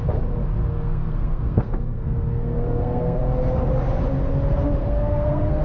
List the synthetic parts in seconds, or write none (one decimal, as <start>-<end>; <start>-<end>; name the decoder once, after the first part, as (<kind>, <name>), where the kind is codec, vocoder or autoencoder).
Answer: 0.7-3.2 (codec, SNAC); 4.8-5.6